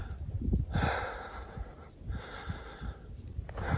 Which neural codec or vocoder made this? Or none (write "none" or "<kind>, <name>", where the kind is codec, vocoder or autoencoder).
none